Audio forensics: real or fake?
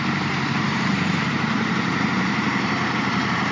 fake